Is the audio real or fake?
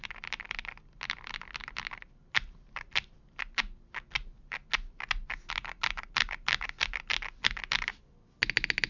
real